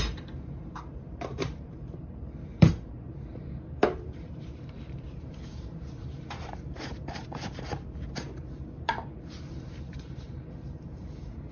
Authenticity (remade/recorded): remade